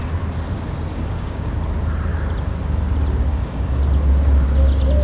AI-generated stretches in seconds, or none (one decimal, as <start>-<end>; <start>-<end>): 0.9-1.5; 3.3-3.8